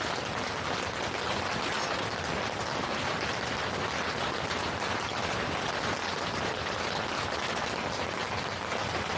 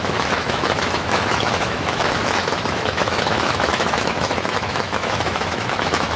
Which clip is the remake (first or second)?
second